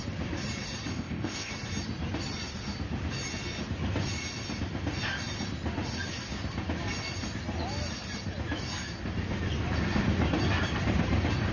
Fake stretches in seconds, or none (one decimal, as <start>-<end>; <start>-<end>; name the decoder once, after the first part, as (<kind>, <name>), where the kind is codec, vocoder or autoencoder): 0.9-1.5 (codec, ZipCodec)